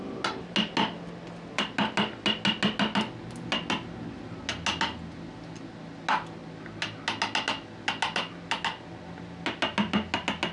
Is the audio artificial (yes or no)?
no